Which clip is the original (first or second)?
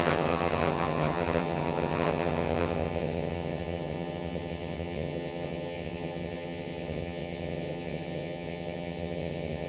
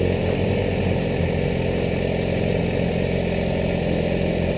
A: second